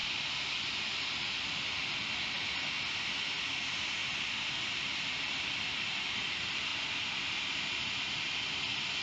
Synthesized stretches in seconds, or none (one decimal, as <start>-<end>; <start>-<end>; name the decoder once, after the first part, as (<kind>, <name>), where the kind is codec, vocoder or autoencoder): 4.0-6.1 (vocoder, BigVGAN v2)